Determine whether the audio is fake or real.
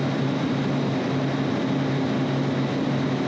real